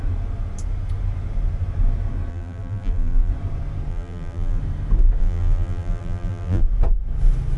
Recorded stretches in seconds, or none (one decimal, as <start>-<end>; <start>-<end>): 0.0-2.3; 3.3-3.9; 4.6-5.2; 6.6-7.6